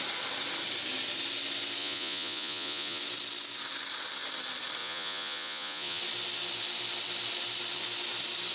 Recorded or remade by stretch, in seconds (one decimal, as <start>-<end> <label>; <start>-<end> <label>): 0.0-1.8 recorded; 1.8-3.0 remade; 3.0-4.8 recorded; 4.8-6.0 remade; 6.0-8.5 recorded